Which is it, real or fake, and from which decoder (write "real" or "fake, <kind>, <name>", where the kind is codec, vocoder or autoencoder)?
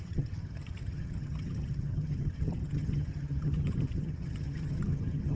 fake, vocoder, HiFi-GAN